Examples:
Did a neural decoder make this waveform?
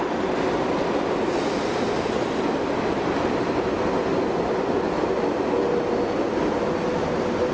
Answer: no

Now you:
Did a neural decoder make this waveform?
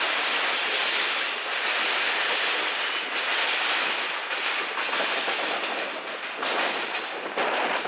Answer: no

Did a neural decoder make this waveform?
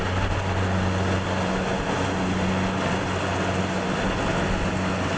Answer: no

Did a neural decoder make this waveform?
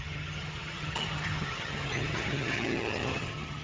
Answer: yes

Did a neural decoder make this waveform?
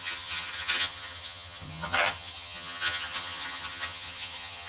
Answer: yes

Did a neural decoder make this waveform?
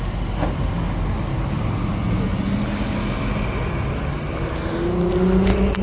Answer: no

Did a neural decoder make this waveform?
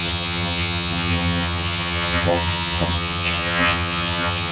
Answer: yes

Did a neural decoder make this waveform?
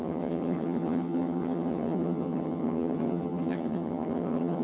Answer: yes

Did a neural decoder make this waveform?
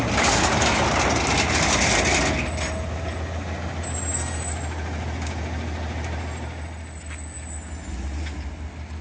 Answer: no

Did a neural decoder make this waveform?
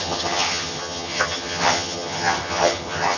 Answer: yes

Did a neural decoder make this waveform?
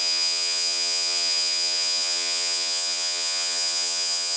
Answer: yes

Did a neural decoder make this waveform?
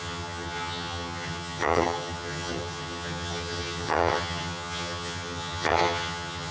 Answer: yes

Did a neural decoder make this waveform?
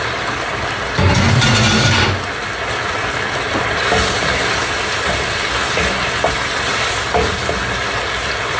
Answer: no